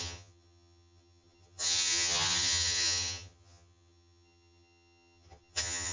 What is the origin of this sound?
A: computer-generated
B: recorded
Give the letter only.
A